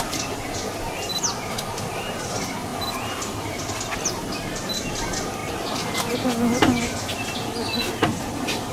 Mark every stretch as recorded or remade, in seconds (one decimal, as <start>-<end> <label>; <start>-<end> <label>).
0.0-8.1 recorded; 8.1-8.7 remade